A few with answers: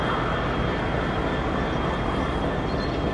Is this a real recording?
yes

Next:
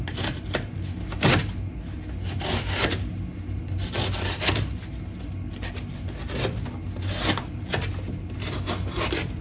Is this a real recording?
yes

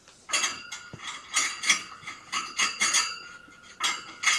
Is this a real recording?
yes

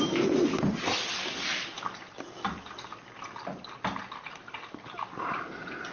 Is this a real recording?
yes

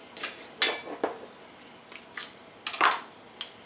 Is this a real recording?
yes